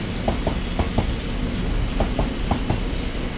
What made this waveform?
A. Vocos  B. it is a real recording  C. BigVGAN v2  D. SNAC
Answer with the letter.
B